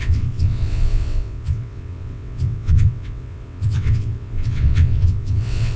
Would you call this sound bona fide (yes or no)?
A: no